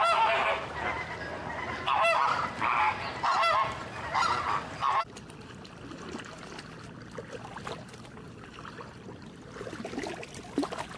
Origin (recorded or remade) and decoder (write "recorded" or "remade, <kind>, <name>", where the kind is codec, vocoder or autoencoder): recorded